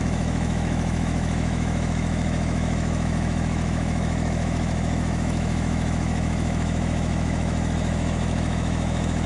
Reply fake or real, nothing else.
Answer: fake